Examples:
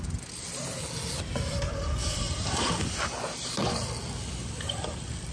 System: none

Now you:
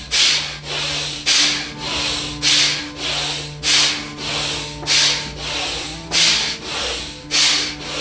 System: none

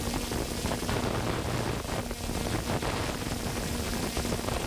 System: none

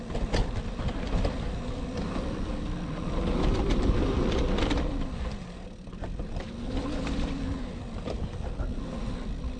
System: none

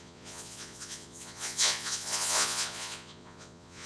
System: vocoder, Vocos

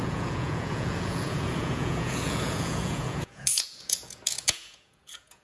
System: vocoder, Vocos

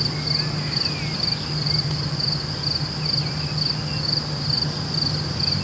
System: none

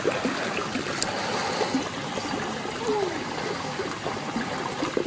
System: none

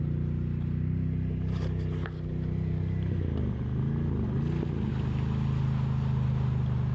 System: none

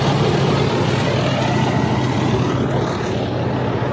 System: none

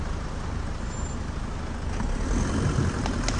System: none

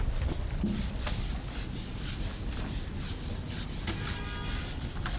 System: none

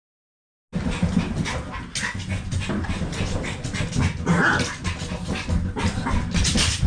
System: none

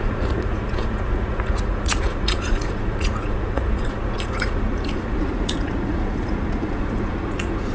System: vocoder, Vocos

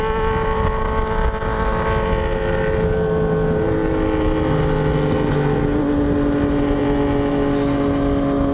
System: none